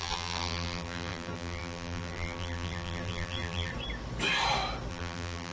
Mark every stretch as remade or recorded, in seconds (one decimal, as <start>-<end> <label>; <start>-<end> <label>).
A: 0.0-3.7 remade; 3.7-4.9 recorded; 4.9-5.5 remade